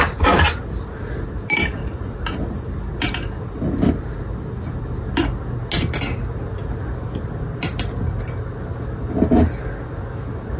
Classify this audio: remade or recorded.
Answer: recorded